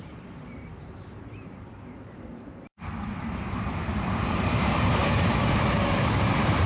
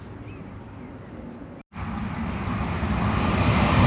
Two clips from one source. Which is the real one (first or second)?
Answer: second